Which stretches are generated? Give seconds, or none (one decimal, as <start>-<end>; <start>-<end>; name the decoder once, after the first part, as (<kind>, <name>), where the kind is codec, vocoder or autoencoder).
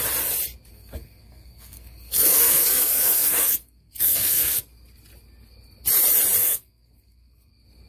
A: 0.7-4.6 (codec, SNAC); 6.4-7.5